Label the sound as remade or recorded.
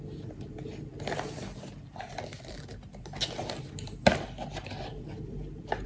recorded